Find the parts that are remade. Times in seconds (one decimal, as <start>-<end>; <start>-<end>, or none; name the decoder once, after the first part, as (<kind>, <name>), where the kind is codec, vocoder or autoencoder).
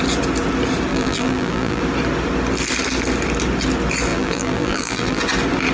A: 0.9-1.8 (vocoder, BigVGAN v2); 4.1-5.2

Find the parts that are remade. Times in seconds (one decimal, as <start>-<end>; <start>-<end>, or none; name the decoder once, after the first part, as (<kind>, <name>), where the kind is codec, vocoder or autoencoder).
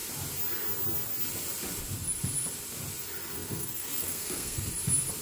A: 3.3-4.7 (codec, SNAC)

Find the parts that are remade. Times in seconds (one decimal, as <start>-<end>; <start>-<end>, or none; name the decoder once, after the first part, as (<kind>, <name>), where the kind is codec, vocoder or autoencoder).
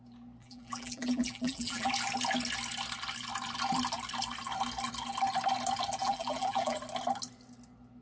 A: 0.4-1.9 (vocoder, BigVGAN v2); 6.0-6.8